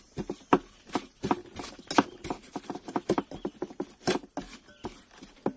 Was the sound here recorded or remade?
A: recorded